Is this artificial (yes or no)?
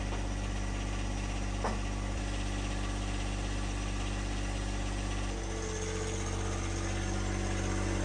no